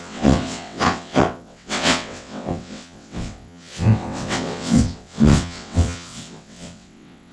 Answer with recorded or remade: remade